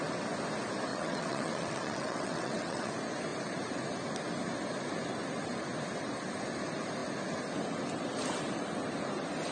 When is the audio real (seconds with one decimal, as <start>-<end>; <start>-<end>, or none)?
0.0-0.9; 2.9-9.5